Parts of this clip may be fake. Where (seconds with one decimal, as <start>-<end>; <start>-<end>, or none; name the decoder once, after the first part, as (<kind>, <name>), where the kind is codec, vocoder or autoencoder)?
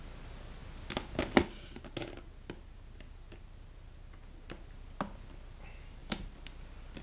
none